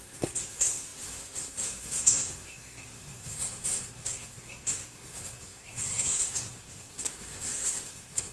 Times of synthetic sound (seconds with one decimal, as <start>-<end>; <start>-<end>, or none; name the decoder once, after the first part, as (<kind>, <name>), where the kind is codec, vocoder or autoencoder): 0.0-8.3 (codec, SNAC)